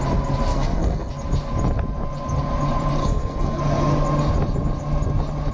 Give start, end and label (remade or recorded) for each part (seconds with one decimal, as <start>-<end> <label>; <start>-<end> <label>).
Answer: 0.0-0.5 recorded; 0.5-1.1 remade; 1.1-3.0 recorded; 3.0-3.6 remade; 3.6-5.5 recorded